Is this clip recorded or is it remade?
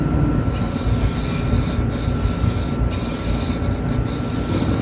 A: recorded